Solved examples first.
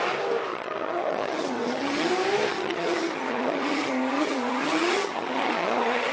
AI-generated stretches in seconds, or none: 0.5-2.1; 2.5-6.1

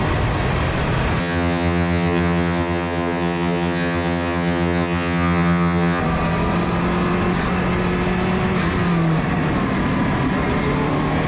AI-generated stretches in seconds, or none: 1.2-6.0